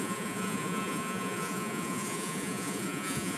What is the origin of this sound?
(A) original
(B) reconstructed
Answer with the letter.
B